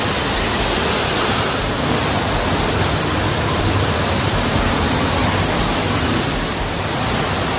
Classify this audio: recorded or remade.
recorded